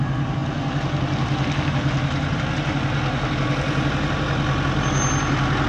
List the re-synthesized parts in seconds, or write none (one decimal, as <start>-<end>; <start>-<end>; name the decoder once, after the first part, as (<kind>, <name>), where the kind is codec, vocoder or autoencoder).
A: none